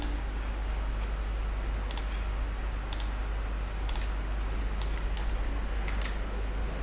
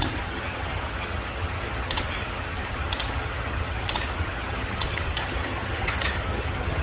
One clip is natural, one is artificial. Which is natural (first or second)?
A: first